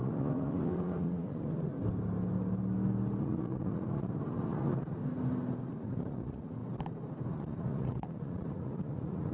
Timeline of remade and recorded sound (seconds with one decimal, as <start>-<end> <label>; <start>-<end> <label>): 0.0-1.7 remade; 1.7-3.2 recorded; 3.2-5.0 remade; 5.0-5.7 recorded; 5.7-6.6 remade; 6.6-7.3 recorded; 7.3-9.3 remade